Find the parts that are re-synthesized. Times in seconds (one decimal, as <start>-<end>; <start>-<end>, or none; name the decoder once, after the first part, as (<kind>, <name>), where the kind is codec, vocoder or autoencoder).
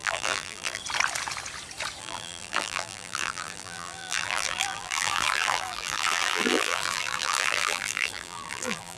0.0-0.8 (vocoder, BigVGAN v2); 2.0-9.0